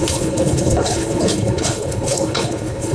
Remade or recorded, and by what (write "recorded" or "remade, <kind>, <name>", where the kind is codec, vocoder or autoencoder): remade, codec, HILCodec